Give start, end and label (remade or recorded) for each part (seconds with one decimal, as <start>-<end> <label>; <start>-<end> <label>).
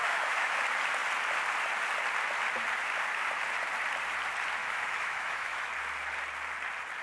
0.0-0.6 remade; 0.6-4.6 recorded; 4.6-5.7 remade; 5.7-7.0 recorded